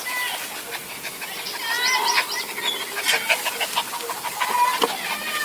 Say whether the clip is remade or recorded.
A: recorded